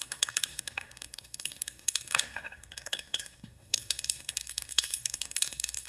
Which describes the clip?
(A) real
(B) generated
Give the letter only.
B